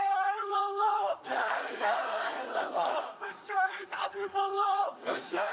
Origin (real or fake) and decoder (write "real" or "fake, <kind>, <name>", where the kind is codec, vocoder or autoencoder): fake, codec, SNAC